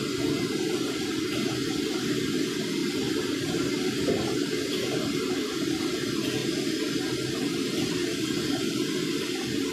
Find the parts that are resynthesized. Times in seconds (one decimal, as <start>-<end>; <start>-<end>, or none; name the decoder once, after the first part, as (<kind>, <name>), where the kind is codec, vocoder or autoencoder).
2.8-5.8 (vocoder, BigVGAN v2)